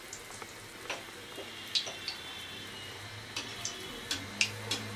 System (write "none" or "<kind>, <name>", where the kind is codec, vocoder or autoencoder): none